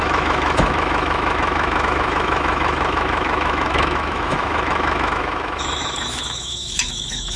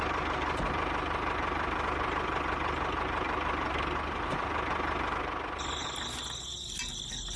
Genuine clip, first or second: second